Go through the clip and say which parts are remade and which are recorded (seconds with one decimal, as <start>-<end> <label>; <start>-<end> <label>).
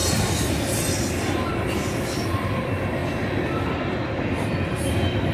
0.0-5.3 recorded